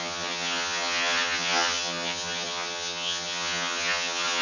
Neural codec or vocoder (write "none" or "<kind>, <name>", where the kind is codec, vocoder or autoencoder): vocoder, HiFi-GAN